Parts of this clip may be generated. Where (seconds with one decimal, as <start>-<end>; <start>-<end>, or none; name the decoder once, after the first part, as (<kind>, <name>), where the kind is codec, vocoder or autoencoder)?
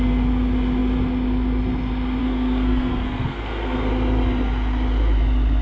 2.2-3.9 (codec, SNAC)